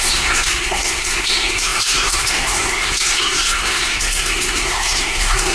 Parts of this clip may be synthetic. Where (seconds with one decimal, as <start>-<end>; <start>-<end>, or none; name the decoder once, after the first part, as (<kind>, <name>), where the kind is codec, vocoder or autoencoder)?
0.0-5.5 (codec, SNAC)